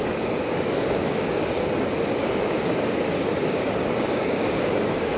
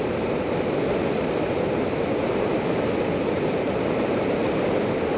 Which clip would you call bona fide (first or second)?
second